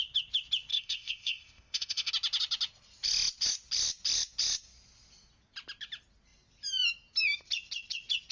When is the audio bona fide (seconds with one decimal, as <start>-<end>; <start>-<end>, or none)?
0.0-0.7; 2.1-8.3